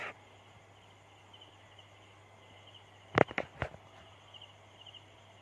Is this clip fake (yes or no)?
no